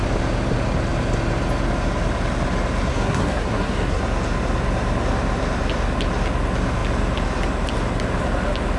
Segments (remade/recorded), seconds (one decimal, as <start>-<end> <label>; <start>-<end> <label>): 0.0-2.9 recorded; 2.9-4.0 remade; 4.0-8.8 recorded